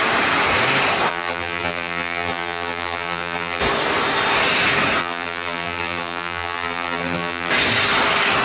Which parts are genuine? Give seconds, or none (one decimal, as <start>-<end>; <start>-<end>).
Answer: 0.0-1.1; 3.6-5.0; 7.5-8.4